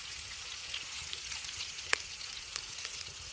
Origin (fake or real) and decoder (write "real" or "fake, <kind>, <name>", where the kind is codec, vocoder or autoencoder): fake, vocoder, Vocos